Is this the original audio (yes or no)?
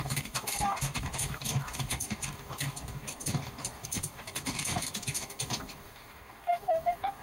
no